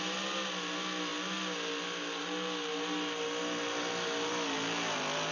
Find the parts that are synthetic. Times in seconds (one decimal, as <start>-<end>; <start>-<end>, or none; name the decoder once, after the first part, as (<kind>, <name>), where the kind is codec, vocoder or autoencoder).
none